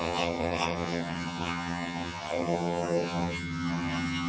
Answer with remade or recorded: remade